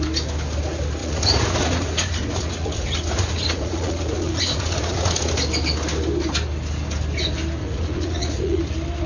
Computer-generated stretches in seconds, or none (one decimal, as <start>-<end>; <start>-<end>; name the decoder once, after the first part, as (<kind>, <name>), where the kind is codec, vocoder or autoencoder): 1.0-5.3 (vocoder, Vocos); 7.6-8.6